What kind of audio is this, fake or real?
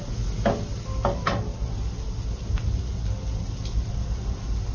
real